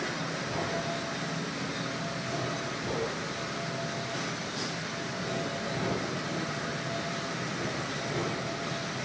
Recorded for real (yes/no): yes